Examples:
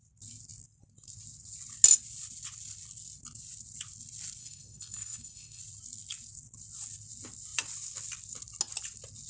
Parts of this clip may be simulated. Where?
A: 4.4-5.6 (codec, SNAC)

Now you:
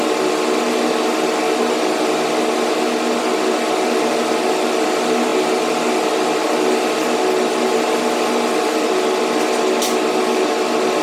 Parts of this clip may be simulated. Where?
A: none

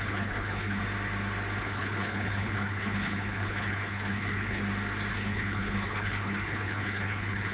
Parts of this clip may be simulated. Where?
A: 0.0-0.8 (codec, HILCodec); 1.6-4.6; 5.1-7.5

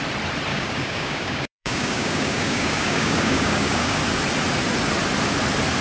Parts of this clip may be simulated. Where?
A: 0.5-4.0 (codec, DAC)

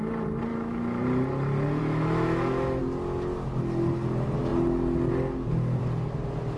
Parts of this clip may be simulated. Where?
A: 0.5-1.0 (autoencoder, DAC-VAE); 1.8-2.8

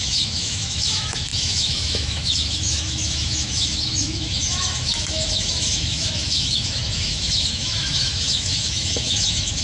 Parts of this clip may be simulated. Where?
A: 0.0-9.6 (autoencoder, DAC-VAE)

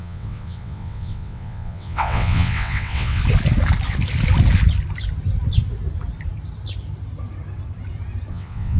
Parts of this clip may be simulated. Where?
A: 0.0-3.2 (vocoder, WaveNeXt); 8.3-8.8

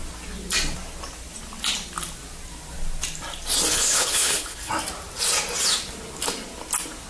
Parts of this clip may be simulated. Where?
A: 3.7-4.7 (codec, HILCodec)